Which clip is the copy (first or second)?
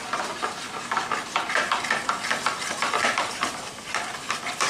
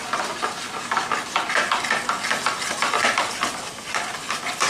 first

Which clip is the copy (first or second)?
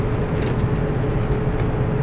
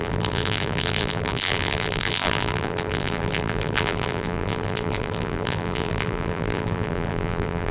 second